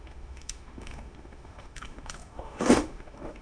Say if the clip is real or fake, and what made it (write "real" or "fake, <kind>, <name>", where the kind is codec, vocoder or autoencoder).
fake, autoencoder, DAC-VAE